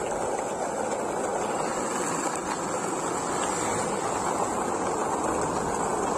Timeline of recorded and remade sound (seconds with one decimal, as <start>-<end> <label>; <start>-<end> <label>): 0.0-6.2 recorded